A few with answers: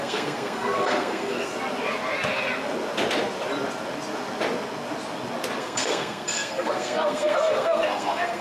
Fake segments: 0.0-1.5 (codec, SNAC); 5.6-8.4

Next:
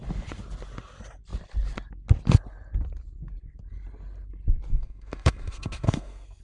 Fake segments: 4.7-6.4 (codec, SNAC)

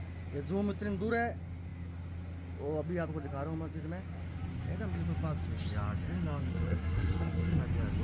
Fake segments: 6.5-7.6 (codec, SNAC)

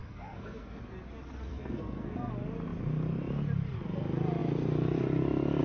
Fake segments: 0.0-0.8 (codec, SNAC); 1.5-2.3

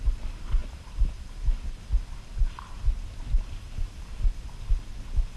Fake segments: none

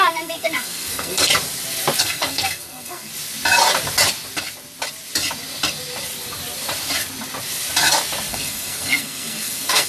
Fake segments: 0.0-1.3 (codec, SNAC); 2.0-3.1; 8.3-9.9